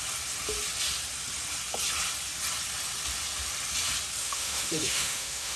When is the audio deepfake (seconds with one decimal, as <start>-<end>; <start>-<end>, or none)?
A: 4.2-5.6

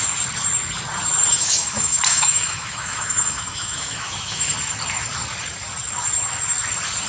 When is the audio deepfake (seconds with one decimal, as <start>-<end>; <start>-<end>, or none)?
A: 1.3-4.5

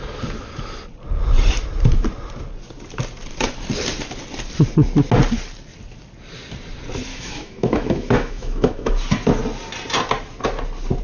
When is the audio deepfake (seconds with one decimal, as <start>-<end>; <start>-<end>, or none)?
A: 7.1-8.9

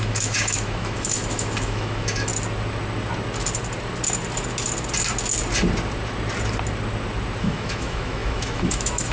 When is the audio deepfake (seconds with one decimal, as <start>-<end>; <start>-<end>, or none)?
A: 0.0-2.3; 7.4-9.1

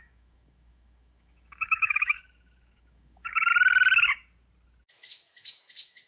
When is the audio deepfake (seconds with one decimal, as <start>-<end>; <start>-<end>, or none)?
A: 0.0-3.5; 4.9-6.1

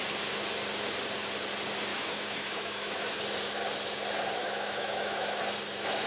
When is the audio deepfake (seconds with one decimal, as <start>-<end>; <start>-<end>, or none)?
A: 1.9-3.2; 4.4-5.4